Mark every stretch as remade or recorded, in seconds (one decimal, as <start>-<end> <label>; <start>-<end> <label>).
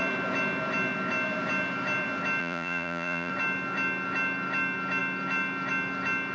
0.0-2.4 recorded; 2.4-3.3 remade; 3.3-6.3 recorded